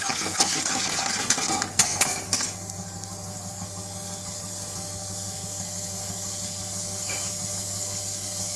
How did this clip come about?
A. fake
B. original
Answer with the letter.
A